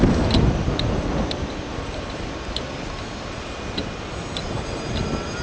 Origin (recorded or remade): recorded